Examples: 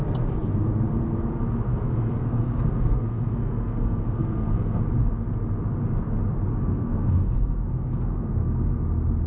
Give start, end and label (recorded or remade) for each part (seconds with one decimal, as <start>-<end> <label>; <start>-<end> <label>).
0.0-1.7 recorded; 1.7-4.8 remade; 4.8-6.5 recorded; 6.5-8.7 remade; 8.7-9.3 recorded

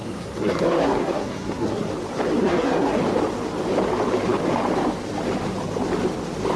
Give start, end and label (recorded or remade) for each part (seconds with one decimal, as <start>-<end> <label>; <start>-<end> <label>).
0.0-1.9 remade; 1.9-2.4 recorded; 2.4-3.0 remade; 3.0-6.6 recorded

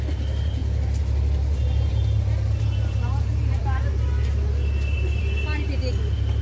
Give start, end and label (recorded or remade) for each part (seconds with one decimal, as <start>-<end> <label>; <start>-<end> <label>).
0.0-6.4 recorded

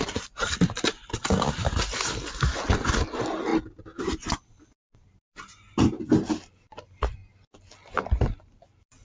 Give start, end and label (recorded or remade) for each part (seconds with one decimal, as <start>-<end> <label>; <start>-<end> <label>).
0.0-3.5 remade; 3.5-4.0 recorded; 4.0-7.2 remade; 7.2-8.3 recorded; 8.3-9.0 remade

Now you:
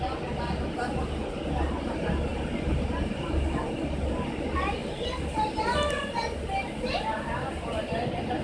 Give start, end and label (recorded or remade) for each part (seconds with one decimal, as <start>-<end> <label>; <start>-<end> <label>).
0.0-8.4 recorded

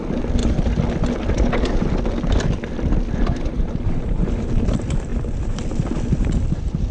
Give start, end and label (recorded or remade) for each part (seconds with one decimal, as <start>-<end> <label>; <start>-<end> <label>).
0.0-6.9 recorded

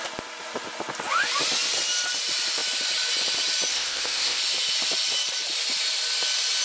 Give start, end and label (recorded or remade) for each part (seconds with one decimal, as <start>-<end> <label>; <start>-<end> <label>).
0.0-3.7 recorded; 3.7-4.4 remade; 4.4-6.6 recorded